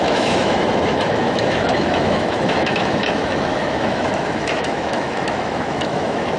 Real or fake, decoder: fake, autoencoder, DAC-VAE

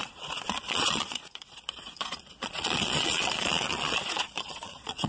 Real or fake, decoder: fake, vocoder, Vocos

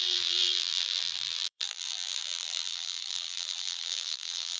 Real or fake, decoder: fake, vocoder, BigVGAN v2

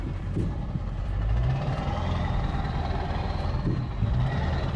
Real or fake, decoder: fake, vocoder, BigVGAN v2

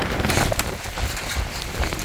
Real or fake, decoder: fake, vocoder, BigVGAN v2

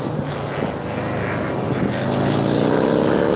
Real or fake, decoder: real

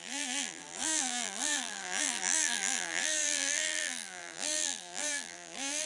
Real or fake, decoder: fake, vocoder, BigVGAN v2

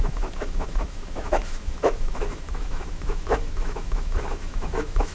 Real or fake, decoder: fake, autoencoder, DAC-VAE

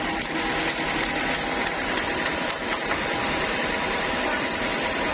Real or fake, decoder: real